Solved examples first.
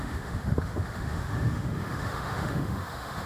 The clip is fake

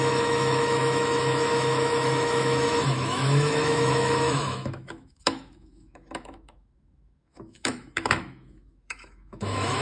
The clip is fake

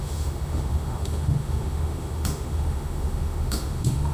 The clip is fake